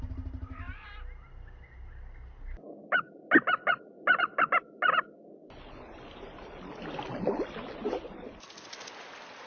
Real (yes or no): yes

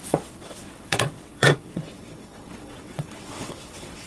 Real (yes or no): no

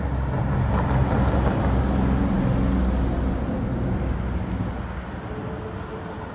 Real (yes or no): yes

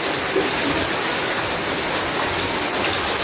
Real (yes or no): yes